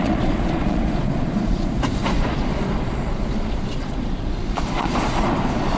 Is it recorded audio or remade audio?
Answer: remade